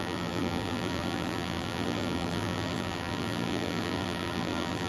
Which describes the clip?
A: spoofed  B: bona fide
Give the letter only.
A